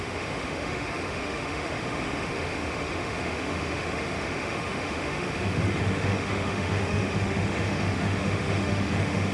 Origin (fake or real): fake